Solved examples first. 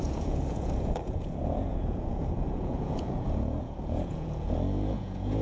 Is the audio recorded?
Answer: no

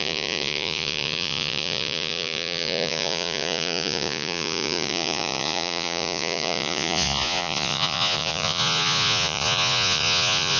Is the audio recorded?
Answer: no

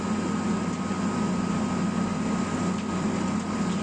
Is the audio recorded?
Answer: yes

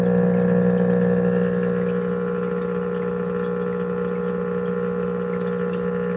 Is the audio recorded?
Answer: yes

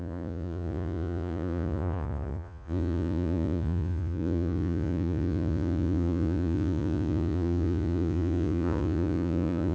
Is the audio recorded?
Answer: no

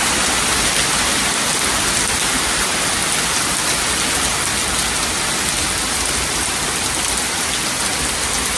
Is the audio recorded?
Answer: yes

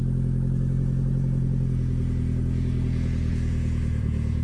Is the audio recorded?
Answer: no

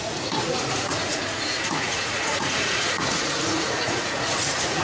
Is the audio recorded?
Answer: no